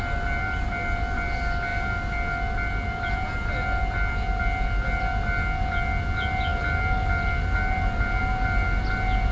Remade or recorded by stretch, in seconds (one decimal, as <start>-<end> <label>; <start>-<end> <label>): 0.0-9.3 recorded